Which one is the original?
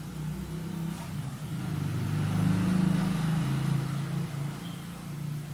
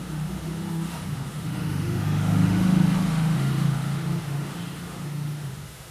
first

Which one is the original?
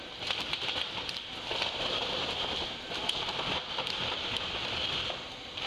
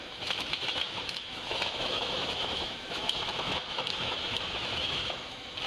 first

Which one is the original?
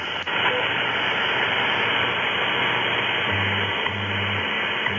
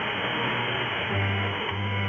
first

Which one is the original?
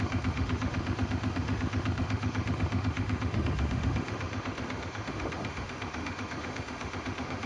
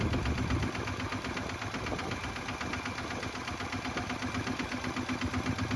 second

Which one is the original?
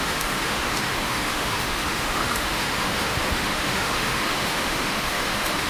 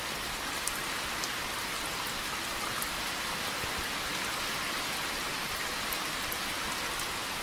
second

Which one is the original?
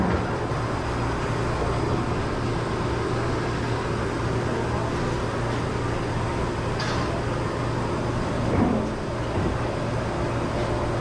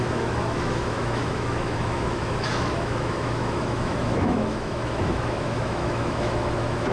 first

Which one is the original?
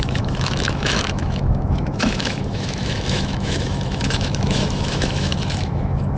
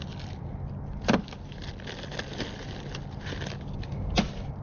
second